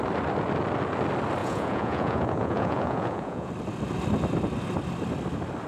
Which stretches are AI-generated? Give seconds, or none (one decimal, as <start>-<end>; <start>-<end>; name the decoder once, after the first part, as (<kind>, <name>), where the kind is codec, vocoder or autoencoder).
1.4-3.5 (vocoder, Vocos)